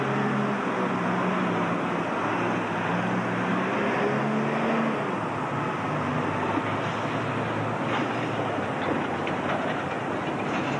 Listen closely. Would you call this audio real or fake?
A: real